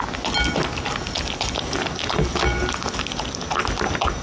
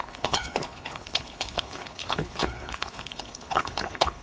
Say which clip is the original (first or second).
first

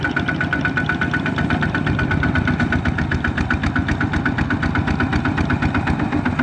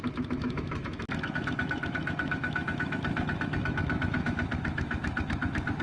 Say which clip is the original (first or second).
first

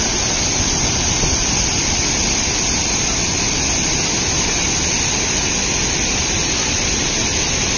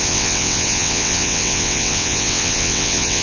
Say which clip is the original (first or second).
first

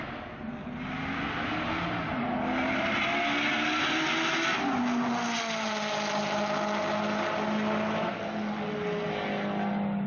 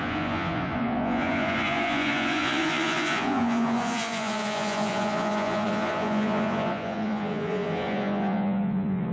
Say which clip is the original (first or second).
first